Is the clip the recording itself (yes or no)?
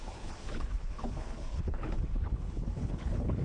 no